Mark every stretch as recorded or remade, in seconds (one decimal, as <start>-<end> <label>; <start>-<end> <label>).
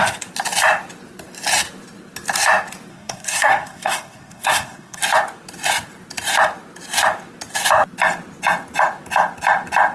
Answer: 0.0-2.9 recorded; 2.9-5.0 remade; 5.0-9.9 recorded